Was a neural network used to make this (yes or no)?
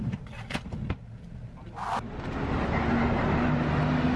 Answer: no